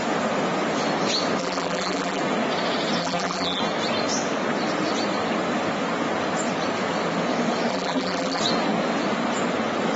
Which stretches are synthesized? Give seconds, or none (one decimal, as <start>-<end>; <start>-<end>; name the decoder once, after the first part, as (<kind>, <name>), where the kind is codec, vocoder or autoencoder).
1.4-2.2 (vocoder, BigVGAN v2); 3.0-3.6; 7.7-8.4